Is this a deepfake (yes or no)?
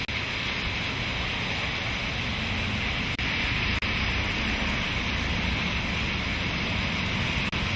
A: no